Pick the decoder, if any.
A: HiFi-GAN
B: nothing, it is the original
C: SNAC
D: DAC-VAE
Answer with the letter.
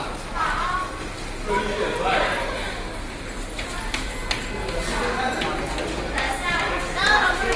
B